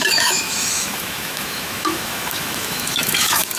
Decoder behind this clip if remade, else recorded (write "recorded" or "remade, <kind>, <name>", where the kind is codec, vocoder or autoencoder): remade, autoencoder, DAC-VAE